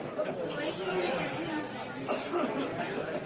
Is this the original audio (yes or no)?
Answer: yes